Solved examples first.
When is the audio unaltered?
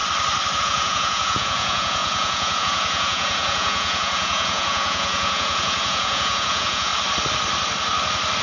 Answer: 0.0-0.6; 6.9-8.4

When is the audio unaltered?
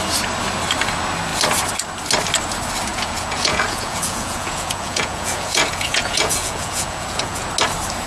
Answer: 0.0-2.9; 7.5-8.1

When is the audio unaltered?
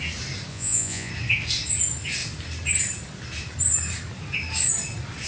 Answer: 0.0-0.5; 1.1-5.3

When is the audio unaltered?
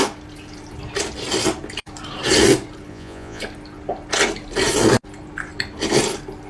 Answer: 0.0-2.9; 3.4-6.5